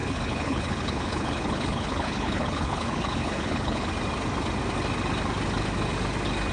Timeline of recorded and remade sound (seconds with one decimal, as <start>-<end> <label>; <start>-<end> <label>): 0.0-3.9 remade; 3.9-6.5 recorded